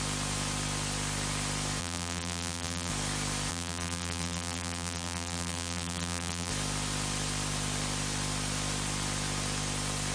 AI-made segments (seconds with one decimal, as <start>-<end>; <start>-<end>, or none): 1.8-2.9; 3.5-6.5